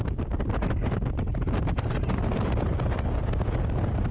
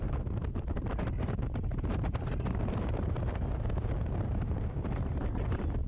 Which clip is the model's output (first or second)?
second